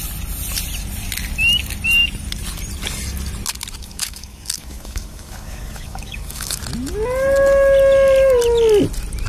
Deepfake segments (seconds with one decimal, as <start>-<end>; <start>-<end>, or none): 3.8-6.6